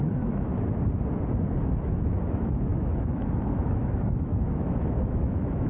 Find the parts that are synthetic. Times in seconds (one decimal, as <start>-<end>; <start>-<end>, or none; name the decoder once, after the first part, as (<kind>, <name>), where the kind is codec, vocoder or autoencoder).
0.0-0.5 (autoencoder, DAC-VAE); 1.8-5.7